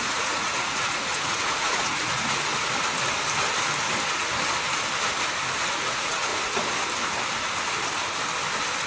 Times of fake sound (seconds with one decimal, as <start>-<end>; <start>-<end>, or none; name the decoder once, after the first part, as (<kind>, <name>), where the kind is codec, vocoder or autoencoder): 0.0-2.5 (vocoder, Vocos); 5.7-6.3